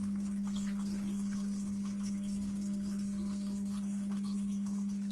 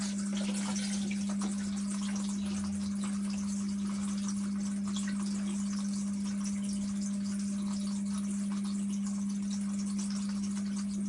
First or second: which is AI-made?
first